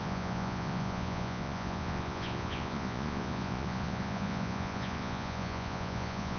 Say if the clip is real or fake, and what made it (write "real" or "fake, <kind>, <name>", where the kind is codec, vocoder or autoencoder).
fake, vocoder, Vocos